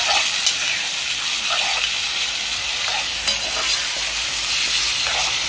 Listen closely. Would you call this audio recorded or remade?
recorded